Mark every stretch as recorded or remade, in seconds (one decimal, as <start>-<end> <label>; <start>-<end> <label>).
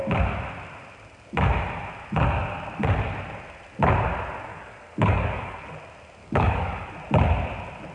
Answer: 0.0-4.5 recorded; 4.5-5.7 remade; 5.7-6.2 recorded; 6.2-6.9 remade; 6.9-7.9 recorded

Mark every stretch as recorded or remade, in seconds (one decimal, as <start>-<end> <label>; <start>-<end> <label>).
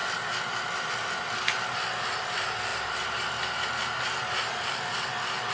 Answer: 0.0-5.5 recorded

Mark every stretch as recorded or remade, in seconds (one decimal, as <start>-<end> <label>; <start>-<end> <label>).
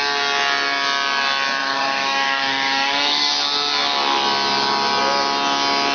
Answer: 0.0-1.6 recorded; 1.6-3.3 remade; 3.3-5.9 recorded